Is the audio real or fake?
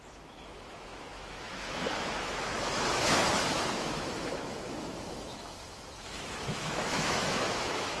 fake